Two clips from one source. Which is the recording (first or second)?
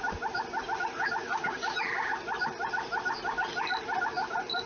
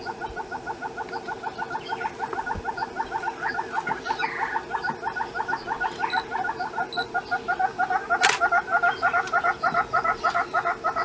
second